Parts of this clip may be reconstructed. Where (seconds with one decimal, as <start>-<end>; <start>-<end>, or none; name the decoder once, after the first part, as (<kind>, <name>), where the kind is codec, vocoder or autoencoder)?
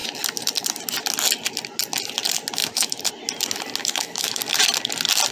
2.6-3.1 (autoencoder, DAC-VAE); 3.8-4.4